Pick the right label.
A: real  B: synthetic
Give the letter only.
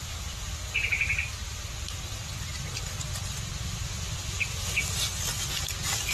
A